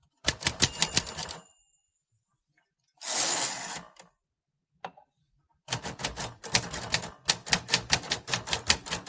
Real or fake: real